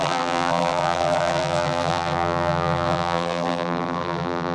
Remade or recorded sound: remade